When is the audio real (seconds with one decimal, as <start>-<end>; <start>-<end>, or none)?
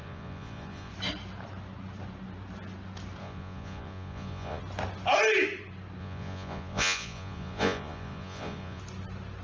0.9-3.2; 4.6-6.0; 8.8-9.4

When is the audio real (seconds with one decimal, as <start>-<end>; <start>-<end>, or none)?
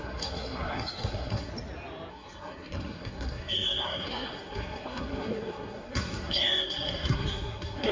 1.5-2.1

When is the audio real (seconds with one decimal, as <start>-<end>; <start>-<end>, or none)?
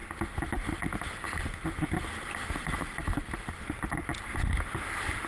0.0-5.3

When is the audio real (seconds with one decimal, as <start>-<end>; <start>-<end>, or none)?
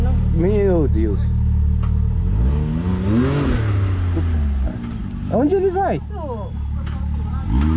0.0-7.8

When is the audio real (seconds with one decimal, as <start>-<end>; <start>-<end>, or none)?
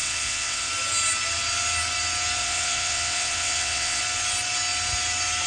0.7-2.4; 4.0-5.5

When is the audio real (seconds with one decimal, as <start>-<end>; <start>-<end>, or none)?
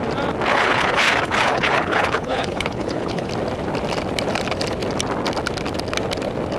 0.0-0.5; 3.3-6.6